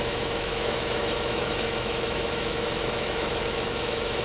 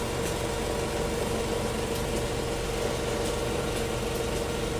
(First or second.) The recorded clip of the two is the second